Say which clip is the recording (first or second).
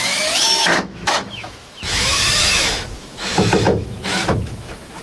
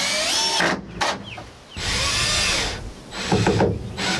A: second